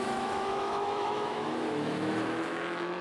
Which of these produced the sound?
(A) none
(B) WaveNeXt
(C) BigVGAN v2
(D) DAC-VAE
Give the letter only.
D